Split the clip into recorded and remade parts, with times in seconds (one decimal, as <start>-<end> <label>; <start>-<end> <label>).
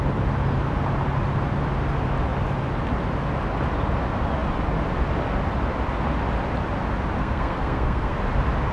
0.0-7.2 recorded; 7.2-8.2 remade; 8.2-8.7 recorded